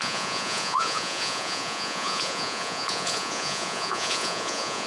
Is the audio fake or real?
fake